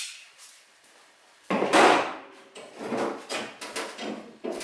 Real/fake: real